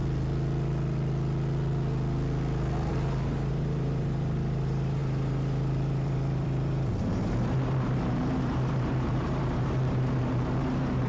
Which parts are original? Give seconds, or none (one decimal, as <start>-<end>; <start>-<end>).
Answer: 0.0-2.9